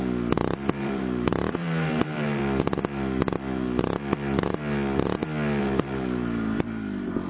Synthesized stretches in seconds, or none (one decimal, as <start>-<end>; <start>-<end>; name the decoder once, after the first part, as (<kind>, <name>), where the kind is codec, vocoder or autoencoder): 0.0-2.4 (vocoder, BigVGAN v2); 5.6-7.3